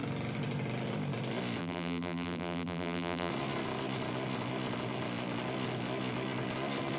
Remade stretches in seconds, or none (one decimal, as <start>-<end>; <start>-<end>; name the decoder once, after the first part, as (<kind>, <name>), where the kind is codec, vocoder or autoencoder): 1.6-3.3 (vocoder, BigVGAN v2)